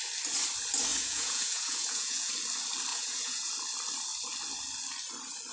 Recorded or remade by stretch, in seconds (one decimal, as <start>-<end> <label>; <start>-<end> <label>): 0.0-0.9 recorded; 0.9-2.3 remade; 2.3-2.9 recorded; 2.9-3.5 remade; 3.5-5.5 recorded